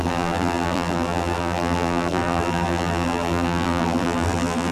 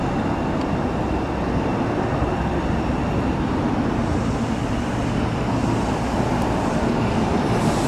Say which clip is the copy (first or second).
first